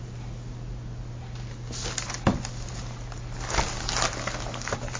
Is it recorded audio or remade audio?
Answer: recorded